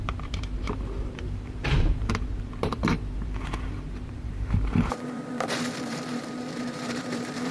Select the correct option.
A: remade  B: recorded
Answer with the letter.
A